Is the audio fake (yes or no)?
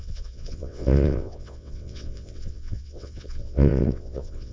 yes